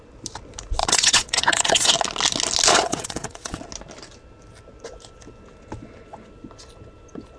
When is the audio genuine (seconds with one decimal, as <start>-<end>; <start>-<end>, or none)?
0.0-0.8; 1.9-2.7; 3.6-7.4